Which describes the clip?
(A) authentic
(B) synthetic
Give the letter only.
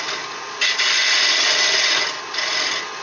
A